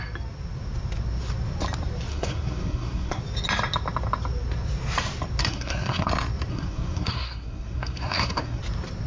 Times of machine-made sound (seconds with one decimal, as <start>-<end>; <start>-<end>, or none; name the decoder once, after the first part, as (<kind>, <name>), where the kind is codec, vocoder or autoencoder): 2.1-3.2 (codec, SNAC); 5.4-6.1; 6.5-8.6